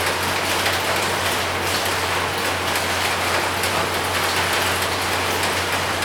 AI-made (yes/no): no